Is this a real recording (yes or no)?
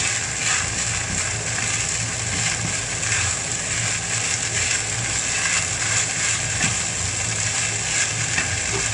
yes